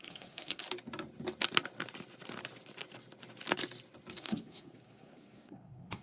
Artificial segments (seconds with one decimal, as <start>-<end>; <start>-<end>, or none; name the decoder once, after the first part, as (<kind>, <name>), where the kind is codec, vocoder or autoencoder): 0.0-0.6 (codec, SNAC); 4.2-6.0